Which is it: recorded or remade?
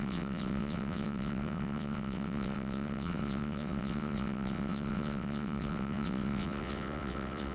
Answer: remade